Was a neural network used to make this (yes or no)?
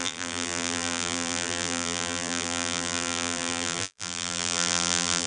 yes